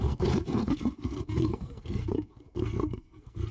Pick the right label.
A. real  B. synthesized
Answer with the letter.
B